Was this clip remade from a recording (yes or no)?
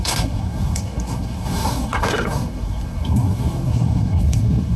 yes